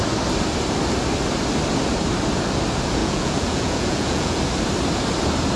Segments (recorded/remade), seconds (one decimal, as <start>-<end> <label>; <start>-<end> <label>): 0.0-3.0 recorded; 3.0-4.4 remade; 4.4-5.6 recorded